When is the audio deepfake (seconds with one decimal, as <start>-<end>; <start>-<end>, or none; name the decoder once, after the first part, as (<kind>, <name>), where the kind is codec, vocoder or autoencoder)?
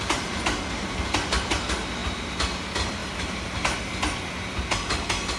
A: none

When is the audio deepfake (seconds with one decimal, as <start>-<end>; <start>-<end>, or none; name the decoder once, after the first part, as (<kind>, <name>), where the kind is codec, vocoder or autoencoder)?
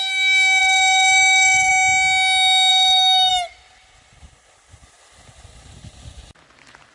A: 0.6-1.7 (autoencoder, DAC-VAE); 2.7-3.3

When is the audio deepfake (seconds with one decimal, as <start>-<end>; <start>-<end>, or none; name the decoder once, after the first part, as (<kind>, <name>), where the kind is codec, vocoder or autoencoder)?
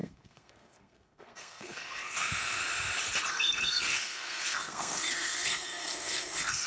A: 0.0-2.6 (codec, SNAC); 3.3-6.7